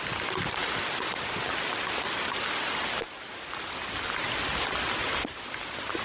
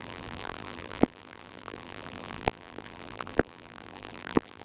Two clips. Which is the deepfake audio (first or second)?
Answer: second